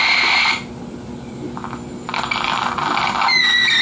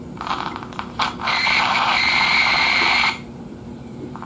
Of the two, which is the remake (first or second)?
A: second